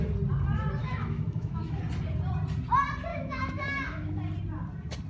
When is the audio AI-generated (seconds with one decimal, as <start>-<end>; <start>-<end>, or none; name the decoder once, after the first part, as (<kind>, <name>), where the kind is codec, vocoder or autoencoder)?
0.8-1.8 (autoencoder, DAC-VAE); 3.1-4.2

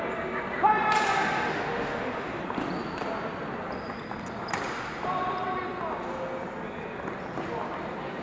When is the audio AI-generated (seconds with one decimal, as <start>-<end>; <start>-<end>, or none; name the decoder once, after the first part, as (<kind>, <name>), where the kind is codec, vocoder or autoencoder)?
1.5-2.4 (autoencoder, DAC-VAE)

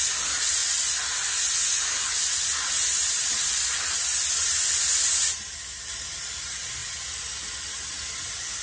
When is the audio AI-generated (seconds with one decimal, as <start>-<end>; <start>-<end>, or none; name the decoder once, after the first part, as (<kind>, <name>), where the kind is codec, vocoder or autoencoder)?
none

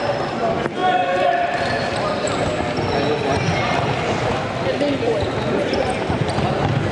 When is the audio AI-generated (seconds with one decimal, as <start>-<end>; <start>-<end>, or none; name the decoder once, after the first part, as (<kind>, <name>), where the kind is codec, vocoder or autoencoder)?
none

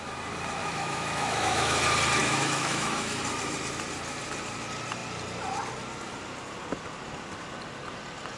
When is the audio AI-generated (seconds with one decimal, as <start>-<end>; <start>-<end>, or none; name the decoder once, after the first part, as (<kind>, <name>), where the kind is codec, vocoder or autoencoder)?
0.6-1.8 (autoencoder, DAC-VAE); 2.2-3.2

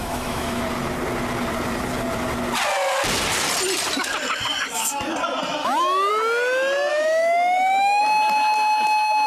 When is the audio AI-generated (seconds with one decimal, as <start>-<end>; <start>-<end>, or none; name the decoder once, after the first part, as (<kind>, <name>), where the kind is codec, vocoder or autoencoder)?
0.0-0.6 (autoencoder, DAC-VAE); 5.6-6.1; 6.9-8.0

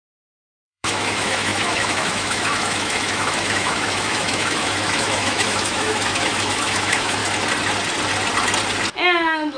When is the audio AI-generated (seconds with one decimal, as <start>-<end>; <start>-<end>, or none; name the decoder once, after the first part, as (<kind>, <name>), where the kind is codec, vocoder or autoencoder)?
0.0-7.2 (autoencoder, DAC-VAE); 8.9-9.6

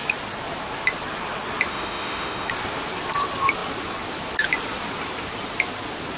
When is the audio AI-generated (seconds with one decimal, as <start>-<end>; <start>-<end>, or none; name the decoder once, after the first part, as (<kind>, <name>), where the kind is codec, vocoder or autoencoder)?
1.7-2.5 (autoencoder, DAC-VAE)